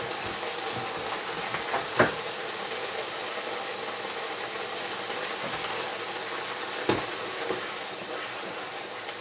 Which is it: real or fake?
real